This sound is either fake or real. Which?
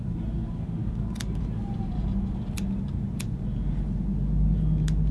real